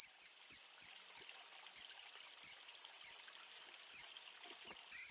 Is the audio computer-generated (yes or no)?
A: no